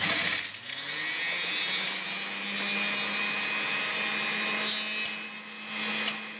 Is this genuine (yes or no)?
yes